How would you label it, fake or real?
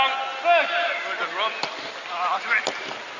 real